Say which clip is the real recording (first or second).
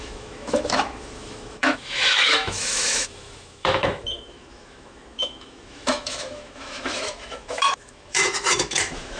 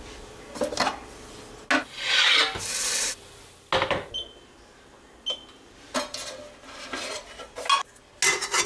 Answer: second